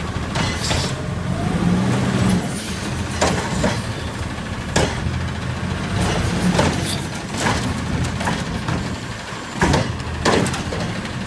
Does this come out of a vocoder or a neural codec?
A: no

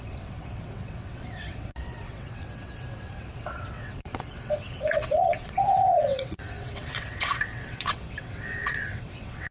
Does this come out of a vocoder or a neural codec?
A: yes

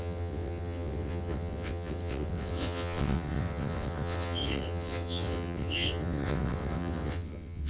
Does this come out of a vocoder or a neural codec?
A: yes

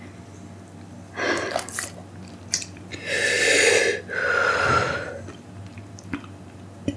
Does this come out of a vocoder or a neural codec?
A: no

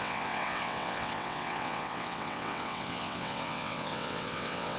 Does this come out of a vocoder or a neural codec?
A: yes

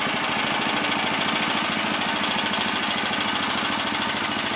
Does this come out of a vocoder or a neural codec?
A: no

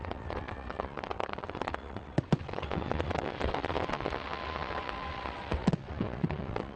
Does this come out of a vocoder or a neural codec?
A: yes